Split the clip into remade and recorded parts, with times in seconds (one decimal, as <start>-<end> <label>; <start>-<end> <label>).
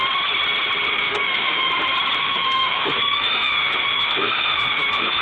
0.0-0.9 recorded; 0.9-1.7 remade; 1.7-2.2 recorded; 2.2-5.2 remade